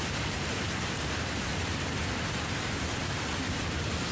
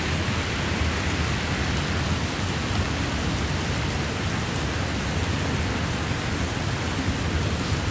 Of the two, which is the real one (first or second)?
second